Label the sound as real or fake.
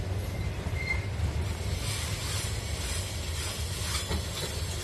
real